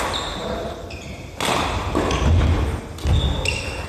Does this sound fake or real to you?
real